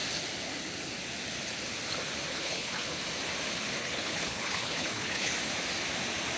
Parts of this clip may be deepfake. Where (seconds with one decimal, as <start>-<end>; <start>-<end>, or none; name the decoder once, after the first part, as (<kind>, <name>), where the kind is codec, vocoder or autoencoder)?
2.3-3.0 (codec, HILCodec); 3.8-5.3